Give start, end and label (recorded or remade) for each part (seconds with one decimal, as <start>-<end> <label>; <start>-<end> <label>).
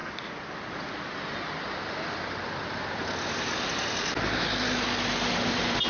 0.0-5.9 recorded